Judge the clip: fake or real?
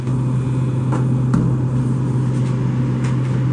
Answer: real